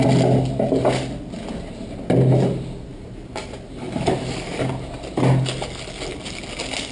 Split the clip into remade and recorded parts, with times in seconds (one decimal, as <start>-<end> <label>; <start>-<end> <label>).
0.0-2.9 recorded; 2.9-4.5 remade; 4.5-6.9 recorded